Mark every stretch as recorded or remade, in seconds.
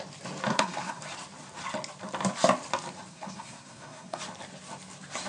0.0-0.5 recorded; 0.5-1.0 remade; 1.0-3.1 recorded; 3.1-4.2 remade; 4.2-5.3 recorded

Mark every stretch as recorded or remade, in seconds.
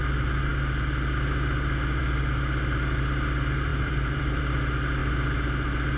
0.0-3.7 recorded; 3.7-4.4 remade; 4.4-6.0 recorded